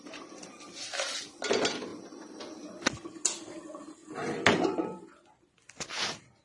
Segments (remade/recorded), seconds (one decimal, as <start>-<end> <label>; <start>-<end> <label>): 0.0-6.4 recorded